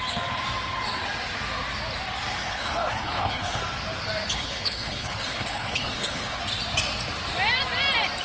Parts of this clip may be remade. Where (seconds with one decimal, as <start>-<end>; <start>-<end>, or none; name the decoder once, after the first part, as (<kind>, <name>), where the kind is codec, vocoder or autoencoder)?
2.3-3.6 (codec, HILCodec); 4.3-6.4